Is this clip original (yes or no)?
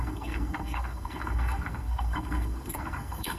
no